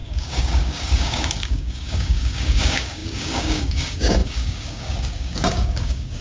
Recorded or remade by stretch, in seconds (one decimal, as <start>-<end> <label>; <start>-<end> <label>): 0.0-6.2 remade